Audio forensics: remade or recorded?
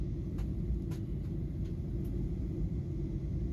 recorded